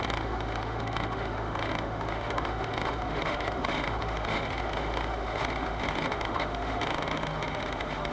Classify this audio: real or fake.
fake